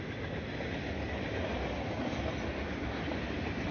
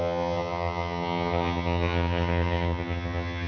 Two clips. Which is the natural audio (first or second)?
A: first